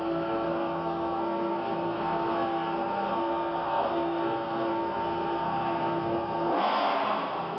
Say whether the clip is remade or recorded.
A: remade